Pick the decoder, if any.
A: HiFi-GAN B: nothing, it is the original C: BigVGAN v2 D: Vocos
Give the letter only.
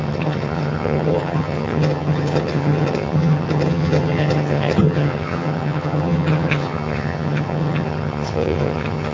A